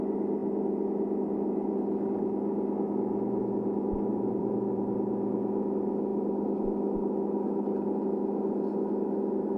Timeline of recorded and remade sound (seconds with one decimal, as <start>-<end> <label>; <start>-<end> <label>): 0.0-4.1 recorded; 4.1-4.8 remade; 4.8-9.6 recorded